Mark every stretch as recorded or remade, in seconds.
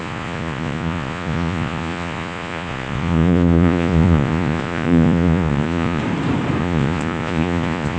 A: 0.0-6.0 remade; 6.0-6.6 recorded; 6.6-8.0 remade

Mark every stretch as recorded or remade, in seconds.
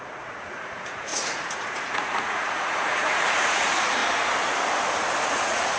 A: 0.0-4.0 remade; 4.0-5.3 recorded; 5.3-5.8 remade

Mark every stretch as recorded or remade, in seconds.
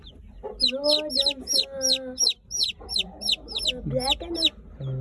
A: 0.0-5.0 recorded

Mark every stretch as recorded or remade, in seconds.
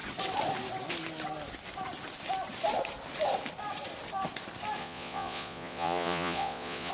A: 0.0-4.8 recorded; 4.8-6.9 remade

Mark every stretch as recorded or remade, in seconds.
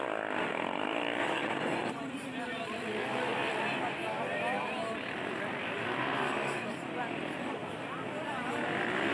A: 0.0-1.2 recorded; 1.2-1.9 remade; 1.9-9.1 recorded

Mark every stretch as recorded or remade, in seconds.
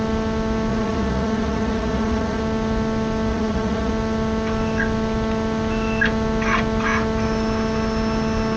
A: 0.0-0.7 recorded; 0.7-2.4 remade; 2.4-3.3 recorded; 3.3-3.9 remade; 3.9-8.6 recorded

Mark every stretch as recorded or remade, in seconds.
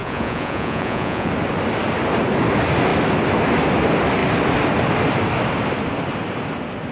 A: 0.0-1.3 remade; 1.3-6.9 recorded